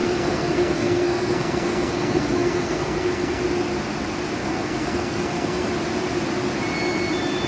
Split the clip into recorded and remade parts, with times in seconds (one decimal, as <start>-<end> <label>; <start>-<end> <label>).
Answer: 0.0-3.4 remade; 3.4-4.4 recorded; 4.4-5.7 remade; 5.7-7.5 recorded